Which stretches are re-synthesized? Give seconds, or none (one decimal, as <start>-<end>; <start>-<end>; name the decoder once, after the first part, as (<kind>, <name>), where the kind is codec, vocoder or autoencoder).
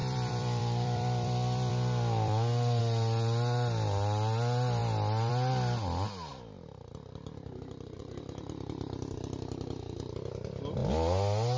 0.0-2.8 (vocoder, BigVGAN v2); 6.3-8.0